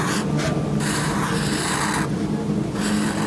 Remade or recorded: recorded